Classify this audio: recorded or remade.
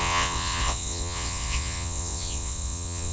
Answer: remade